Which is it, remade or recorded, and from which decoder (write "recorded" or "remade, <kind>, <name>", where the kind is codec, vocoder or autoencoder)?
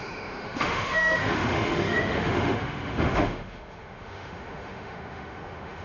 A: remade, autoencoder, DAC-VAE